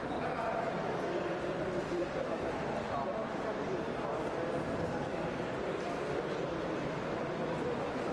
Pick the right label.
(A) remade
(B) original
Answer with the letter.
A